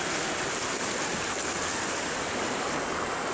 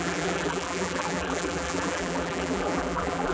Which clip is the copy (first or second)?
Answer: second